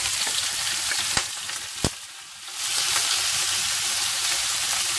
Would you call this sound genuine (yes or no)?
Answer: yes